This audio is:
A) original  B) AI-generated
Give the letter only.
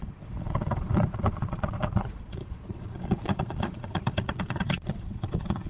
B